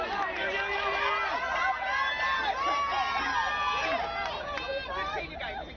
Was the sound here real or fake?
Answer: real